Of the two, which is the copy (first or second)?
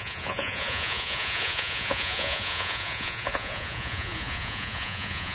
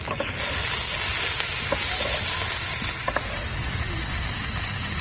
first